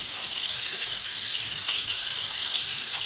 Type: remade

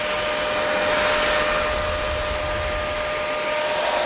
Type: recorded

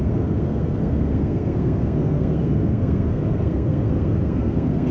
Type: remade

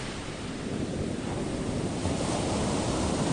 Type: recorded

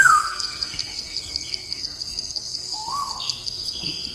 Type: remade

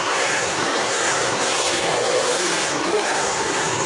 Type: remade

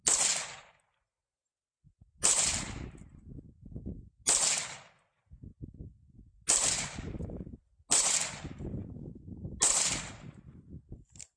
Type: recorded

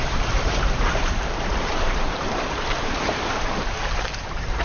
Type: remade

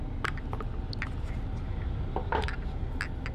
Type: recorded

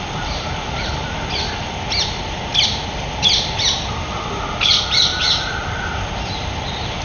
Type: recorded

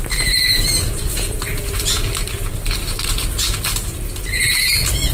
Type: remade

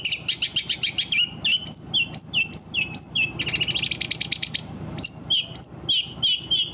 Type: recorded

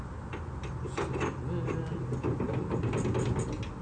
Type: recorded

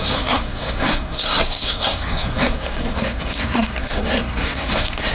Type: remade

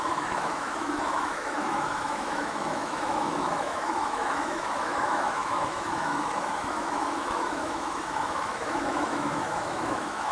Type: remade